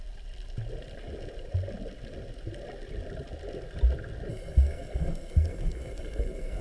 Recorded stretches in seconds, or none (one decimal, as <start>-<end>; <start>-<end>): 0.0-4.3